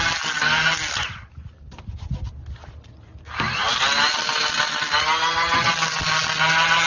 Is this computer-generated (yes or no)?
no